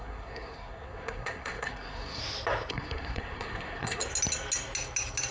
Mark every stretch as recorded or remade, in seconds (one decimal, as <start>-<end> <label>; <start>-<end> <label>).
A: 0.0-2.2 remade; 2.2-2.7 recorded; 2.7-4.0 remade; 4.0-5.3 recorded